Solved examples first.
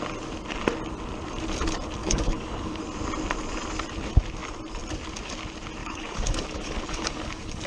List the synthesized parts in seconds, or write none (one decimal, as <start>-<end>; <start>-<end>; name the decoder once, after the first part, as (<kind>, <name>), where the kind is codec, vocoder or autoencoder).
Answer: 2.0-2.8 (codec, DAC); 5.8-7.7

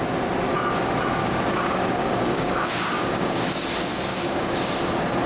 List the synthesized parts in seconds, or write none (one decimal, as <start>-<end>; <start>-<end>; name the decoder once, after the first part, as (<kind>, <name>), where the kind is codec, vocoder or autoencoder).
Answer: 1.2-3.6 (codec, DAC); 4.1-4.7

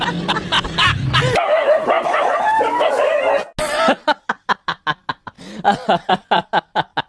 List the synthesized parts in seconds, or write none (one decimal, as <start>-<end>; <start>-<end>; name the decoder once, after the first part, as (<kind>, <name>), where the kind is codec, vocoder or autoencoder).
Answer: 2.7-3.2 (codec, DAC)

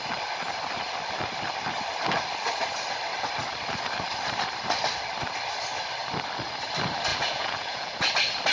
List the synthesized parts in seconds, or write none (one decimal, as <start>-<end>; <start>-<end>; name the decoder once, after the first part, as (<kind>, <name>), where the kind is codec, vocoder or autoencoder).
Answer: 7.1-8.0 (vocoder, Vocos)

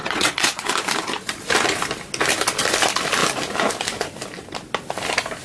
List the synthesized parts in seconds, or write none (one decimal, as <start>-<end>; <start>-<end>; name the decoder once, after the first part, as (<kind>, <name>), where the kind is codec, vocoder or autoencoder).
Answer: 0.0-0.7 (vocoder, WaveNeXt)